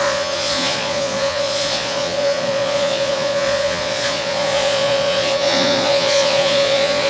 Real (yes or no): no